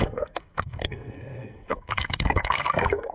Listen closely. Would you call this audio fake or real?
fake